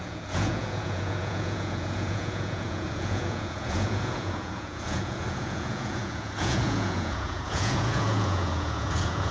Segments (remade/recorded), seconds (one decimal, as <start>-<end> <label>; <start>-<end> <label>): 0.0-9.3 remade